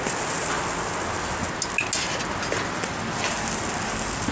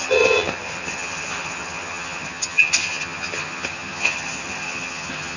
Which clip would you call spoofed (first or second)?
second